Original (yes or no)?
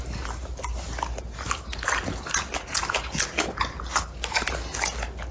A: yes